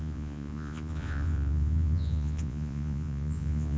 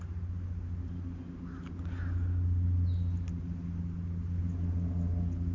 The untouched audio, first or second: second